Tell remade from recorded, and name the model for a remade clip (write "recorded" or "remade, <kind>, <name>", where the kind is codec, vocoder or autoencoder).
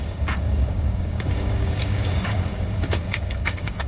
remade, codec, DAC